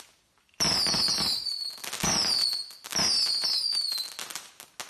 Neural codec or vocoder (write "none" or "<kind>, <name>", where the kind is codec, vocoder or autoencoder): none